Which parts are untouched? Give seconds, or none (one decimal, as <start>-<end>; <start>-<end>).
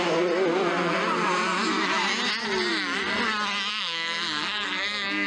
0.0-3.7